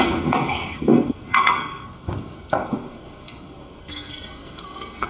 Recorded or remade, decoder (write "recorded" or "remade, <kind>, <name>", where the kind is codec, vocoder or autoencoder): remade, codec, SNAC